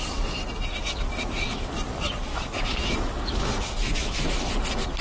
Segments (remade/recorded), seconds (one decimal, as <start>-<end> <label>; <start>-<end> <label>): 0.0-0.8 recorded; 0.8-1.7 remade; 1.7-2.3 recorded; 2.3-4.5 remade; 4.5-5.0 recorded